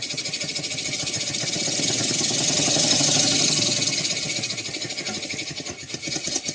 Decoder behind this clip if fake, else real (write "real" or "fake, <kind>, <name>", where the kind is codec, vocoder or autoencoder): fake, vocoder, HiFi-GAN